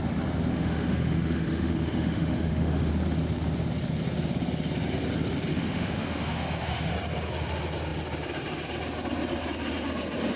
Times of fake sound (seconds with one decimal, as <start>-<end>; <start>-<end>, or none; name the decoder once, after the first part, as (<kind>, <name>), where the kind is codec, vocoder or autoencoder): 0.5-2.9 (autoencoder, DAC-VAE); 5.5-6.9